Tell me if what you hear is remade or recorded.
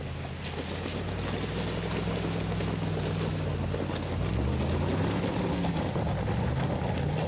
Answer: recorded